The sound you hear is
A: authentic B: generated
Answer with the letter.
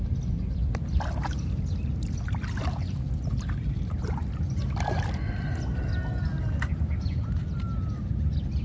A